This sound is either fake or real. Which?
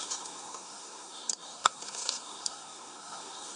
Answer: fake